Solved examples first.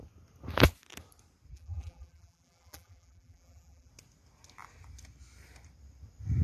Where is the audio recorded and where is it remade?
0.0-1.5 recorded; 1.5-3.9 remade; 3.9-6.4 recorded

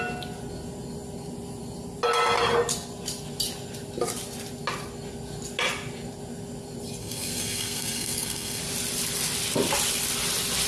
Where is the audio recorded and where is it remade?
0.0-7.0 recorded; 7.0-8.6 remade; 8.6-10.7 recorded

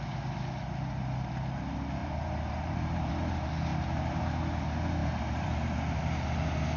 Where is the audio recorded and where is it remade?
0.0-2.0 recorded; 2.0-3.1 remade; 3.1-3.7 recorded; 3.7-4.2 remade; 4.2-5.0 recorded; 5.0-6.0 remade; 6.0-6.8 recorded

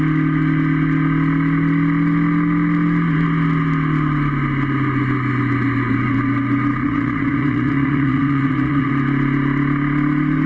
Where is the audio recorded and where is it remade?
0.0-6.8 recorded; 6.8-8.9 remade; 8.9-10.5 recorded